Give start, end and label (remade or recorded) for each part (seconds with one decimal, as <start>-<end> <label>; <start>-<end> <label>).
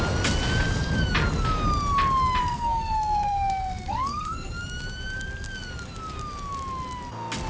0.0-2.4 recorded; 2.4-4.5 remade; 4.5-7.5 recorded